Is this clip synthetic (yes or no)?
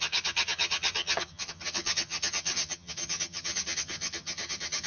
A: yes